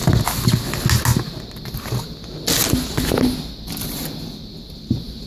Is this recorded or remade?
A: recorded